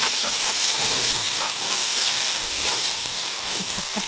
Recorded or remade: remade